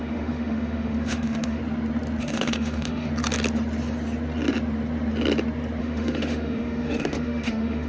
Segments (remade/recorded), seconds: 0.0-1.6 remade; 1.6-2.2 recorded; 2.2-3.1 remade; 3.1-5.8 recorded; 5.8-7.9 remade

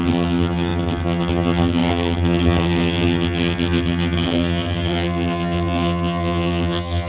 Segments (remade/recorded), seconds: 0.0-7.1 remade

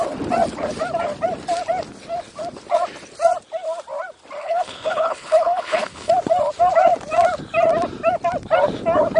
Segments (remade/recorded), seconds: 0.0-4.4 recorded; 4.4-6.1 remade; 6.1-9.2 recorded

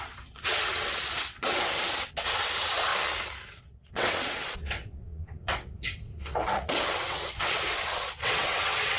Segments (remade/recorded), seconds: 0.0-2.9 remade; 2.9-3.6 recorded; 3.6-9.0 remade

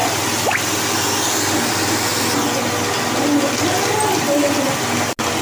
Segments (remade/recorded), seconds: 0.0-5.4 recorded

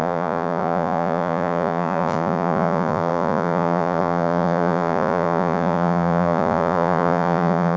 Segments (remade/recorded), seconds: 0.0-7.8 remade

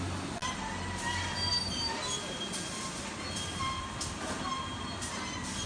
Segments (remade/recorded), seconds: 0.0-5.7 recorded